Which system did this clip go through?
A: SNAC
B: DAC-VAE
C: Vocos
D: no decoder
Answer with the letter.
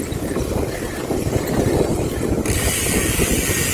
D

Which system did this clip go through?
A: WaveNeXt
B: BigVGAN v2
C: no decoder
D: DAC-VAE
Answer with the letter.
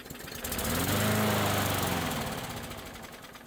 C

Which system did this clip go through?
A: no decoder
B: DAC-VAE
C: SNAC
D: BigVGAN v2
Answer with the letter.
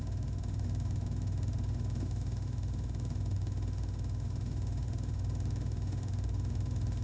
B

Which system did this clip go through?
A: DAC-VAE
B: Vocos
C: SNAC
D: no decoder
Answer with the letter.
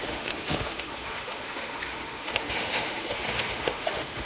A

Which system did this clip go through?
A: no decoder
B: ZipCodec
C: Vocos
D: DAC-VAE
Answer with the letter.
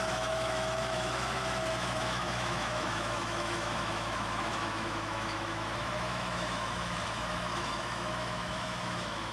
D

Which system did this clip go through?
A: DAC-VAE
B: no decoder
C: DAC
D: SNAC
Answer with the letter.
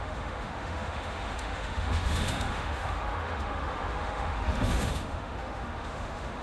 A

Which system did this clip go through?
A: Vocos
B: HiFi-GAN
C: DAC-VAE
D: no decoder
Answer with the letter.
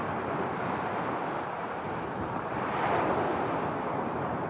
D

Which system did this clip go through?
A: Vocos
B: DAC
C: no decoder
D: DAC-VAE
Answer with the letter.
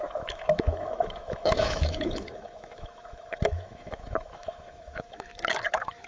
D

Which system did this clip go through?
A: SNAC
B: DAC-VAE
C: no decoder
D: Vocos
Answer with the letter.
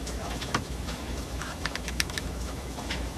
B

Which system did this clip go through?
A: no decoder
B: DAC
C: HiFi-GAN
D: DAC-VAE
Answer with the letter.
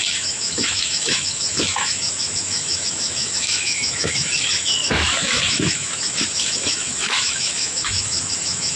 D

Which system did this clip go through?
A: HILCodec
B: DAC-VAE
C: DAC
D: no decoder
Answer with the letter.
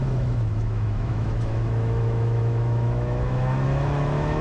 B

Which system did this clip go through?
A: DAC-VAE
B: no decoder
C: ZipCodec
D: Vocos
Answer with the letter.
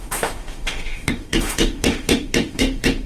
A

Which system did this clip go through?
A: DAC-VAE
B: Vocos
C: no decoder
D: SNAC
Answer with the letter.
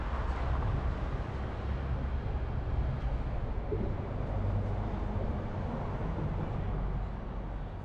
C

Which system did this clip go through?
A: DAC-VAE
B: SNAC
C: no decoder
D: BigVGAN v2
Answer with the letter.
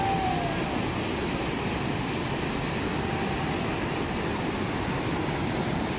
C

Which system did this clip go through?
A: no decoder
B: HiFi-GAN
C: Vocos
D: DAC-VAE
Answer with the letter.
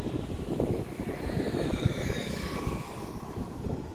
D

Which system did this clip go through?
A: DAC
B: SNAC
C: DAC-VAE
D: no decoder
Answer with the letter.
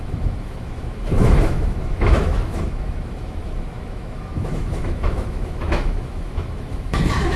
C